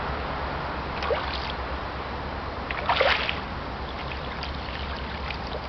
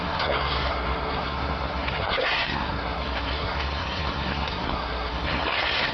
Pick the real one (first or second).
first